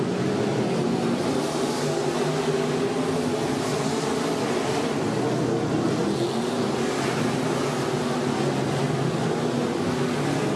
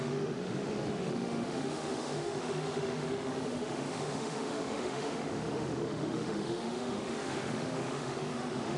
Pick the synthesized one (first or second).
second